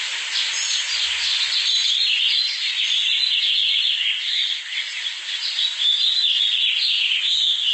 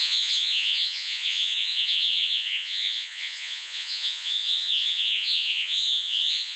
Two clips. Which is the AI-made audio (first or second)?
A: second